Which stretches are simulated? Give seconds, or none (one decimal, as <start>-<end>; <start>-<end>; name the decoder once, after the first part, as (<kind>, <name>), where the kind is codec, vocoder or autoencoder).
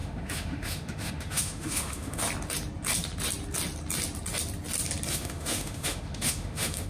0.0-2.2 (autoencoder, DAC-VAE); 5.1-6.9